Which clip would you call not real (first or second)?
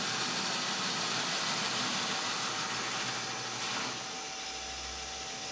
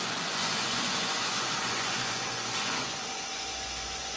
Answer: second